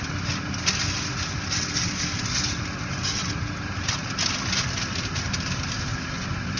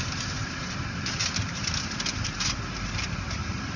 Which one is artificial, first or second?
second